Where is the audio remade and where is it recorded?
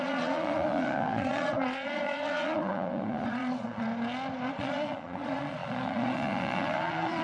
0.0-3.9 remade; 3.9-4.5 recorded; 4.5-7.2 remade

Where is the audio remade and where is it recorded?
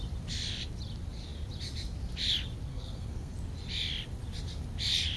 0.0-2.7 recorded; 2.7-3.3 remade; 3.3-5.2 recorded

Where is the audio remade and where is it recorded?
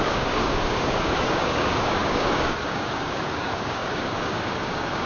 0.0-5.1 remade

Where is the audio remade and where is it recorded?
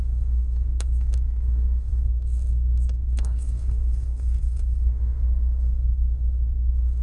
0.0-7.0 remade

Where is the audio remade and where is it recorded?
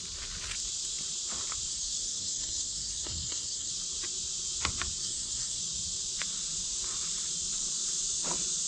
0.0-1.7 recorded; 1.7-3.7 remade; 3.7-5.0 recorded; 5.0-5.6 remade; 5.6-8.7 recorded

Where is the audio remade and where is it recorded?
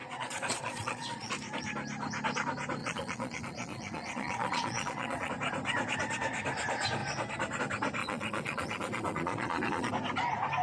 0.0-1.3 remade; 1.3-2.8 recorded; 2.8-5.3 remade; 5.3-8.0 recorded; 8.0-9.9 remade; 9.9-10.6 recorded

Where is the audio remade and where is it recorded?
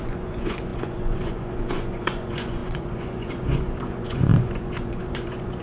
0.0-5.6 remade